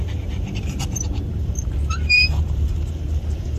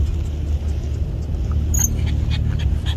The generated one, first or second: first